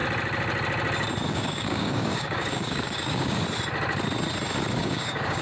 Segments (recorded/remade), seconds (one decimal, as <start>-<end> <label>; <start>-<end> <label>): 0.0-1.3 recorded; 1.3-3.4 remade; 3.4-4.8 recorded; 4.8-5.4 remade